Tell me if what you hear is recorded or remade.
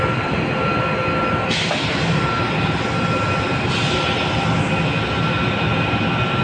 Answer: recorded